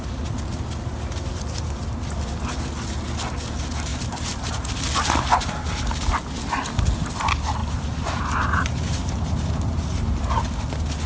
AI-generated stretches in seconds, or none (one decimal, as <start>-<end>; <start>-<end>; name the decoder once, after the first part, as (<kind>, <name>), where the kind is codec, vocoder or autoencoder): 0.9-1.8 (vocoder, BigVGAN v2); 3.9-4.5; 7.6-10.2